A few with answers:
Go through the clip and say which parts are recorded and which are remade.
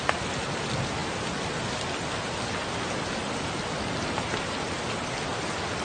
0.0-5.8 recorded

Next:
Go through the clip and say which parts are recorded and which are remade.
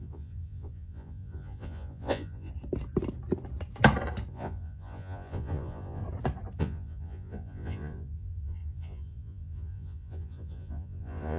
0.0-2.5 remade; 2.5-4.3 recorded; 4.3-6.0 remade; 6.0-6.6 recorded; 6.6-11.4 remade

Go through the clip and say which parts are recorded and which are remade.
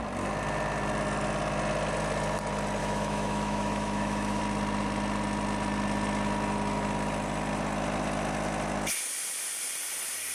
0.0-2.8 recorded; 2.8-4.4 remade; 4.4-10.3 recorded